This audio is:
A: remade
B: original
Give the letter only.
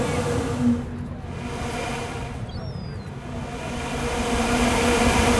B